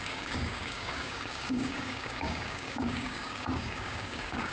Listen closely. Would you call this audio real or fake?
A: fake